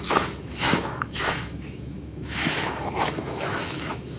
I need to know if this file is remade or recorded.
remade